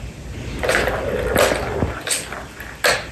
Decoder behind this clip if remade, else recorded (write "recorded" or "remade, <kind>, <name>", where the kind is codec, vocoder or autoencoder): recorded